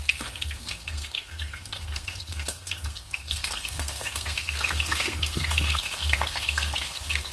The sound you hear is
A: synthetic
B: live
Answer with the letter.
A